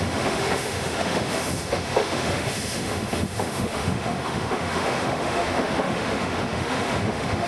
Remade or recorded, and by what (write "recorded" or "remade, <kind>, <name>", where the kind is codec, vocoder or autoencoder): remade, autoencoder, DAC-VAE